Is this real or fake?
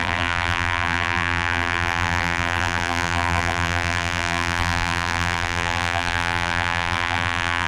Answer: fake